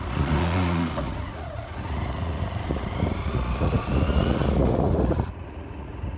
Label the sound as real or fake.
fake